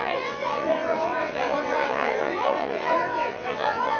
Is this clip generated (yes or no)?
yes